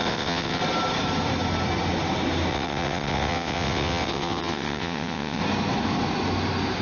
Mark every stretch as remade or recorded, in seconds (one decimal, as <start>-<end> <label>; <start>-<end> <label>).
0.0-0.6 remade; 0.6-2.5 recorded; 2.5-5.4 remade; 5.4-6.8 recorded